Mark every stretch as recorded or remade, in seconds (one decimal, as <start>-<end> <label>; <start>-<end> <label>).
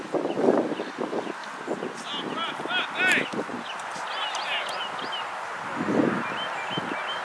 0.0-7.2 recorded